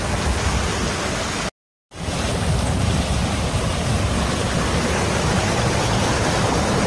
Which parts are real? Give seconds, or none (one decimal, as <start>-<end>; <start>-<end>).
0.0-6.9